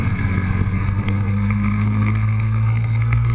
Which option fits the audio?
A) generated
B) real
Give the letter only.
A